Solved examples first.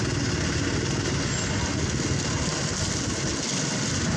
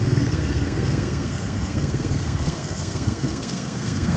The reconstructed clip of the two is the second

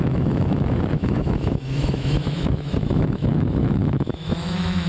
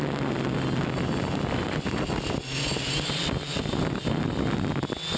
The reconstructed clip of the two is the first